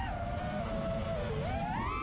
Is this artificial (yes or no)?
no